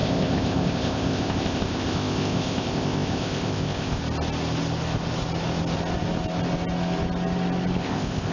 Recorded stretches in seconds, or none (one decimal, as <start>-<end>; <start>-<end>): 4.0-7.8